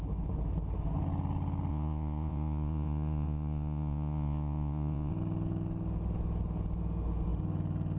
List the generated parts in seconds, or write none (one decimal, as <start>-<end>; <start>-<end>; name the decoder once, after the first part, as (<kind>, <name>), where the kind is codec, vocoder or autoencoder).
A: 1.7-5.1 (vocoder, Vocos)